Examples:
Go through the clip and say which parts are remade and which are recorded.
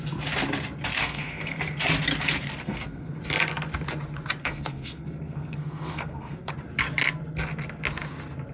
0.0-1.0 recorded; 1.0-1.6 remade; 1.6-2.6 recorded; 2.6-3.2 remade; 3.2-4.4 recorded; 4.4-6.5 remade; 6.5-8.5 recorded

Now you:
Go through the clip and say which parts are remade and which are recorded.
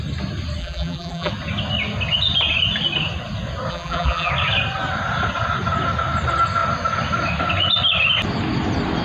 0.0-0.6 recorded; 0.6-1.3 remade; 1.3-3.7 recorded; 3.7-4.3 remade; 4.3-9.0 recorded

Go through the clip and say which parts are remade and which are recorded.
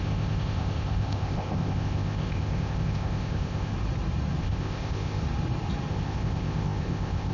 0.0-3.7 remade; 3.7-4.4 recorded; 4.4-5.2 remade; 5.2-5.9 recorded; 5.9-7.3 remade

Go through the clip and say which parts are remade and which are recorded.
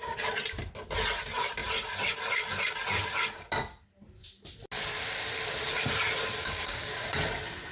0.0-6.4 recorded; 6.4-6.9 remade; 6.9-7.7 recorded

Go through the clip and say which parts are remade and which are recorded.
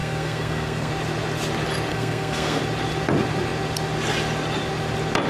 0.0-0.9 remade; 0.9-1.9 recorded; 1.9-2.6 remade; 2.6-5.3 recorded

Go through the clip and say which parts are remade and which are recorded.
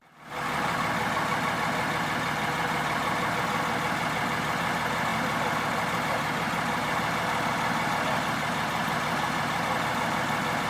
0.0-10.7 recorded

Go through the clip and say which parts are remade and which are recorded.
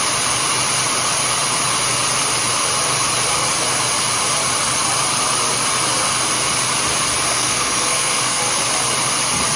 0.0-7.3 recorded; 7.3-8.4 remade; 8.4-9.6 recorded